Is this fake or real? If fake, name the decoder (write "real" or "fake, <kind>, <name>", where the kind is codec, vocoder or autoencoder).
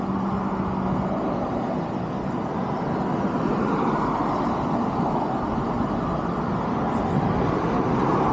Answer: real